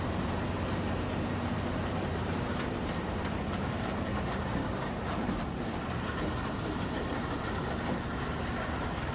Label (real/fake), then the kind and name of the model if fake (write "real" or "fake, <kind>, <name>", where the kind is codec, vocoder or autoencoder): fake, vocoder, BigVGAN v2